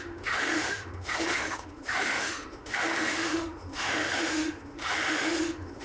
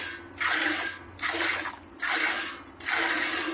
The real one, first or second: second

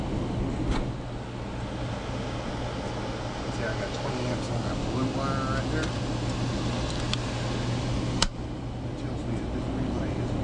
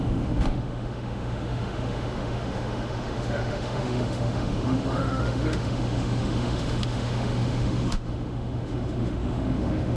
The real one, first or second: first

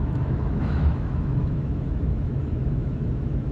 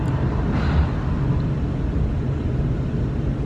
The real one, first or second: second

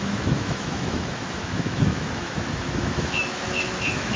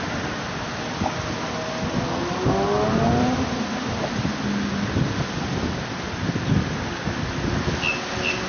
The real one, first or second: second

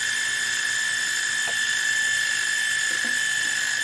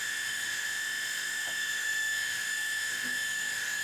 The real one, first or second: first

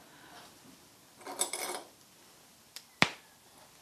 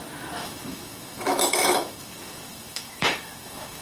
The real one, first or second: first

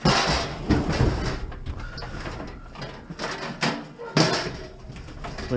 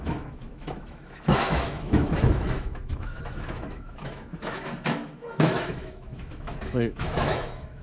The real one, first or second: first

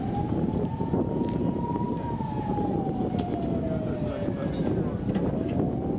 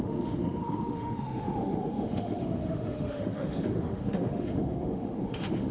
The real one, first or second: first